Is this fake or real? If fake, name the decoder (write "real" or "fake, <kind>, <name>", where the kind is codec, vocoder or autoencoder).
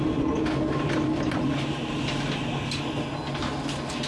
real